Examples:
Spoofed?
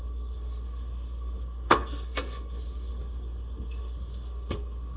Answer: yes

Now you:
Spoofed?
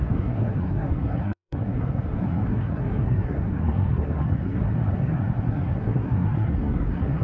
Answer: yes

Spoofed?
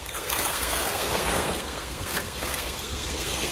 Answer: yes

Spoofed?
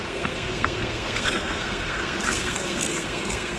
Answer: yes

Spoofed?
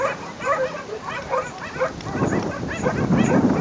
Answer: no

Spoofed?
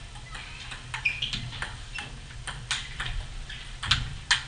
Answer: no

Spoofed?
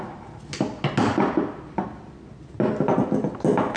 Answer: no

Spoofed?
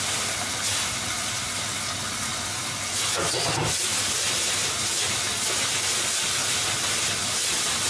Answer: no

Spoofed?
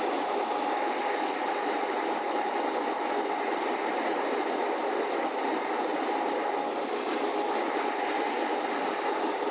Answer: no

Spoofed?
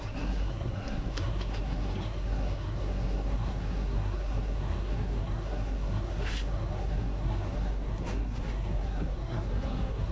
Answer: yes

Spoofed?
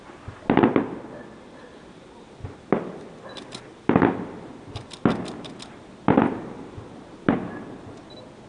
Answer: no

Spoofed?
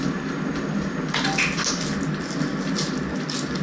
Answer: no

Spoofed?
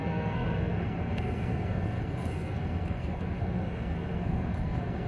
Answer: yes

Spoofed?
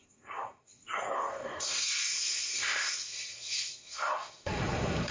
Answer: yes